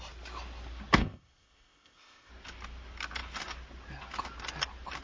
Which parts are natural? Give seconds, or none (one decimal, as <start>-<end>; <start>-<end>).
0.0-1.0; 2.3-5.0